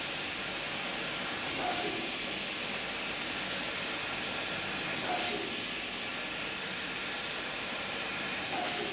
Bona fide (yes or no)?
yes